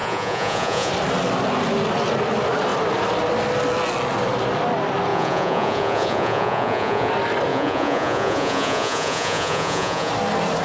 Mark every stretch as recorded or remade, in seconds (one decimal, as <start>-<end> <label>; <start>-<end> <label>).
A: 0.0-0.9 remade; 0.9-5.1 recorded; 5.1-7.1 remade; 7.1-7.5 recorded; 7.5-10.1 remade; 10.1-10.6 recorded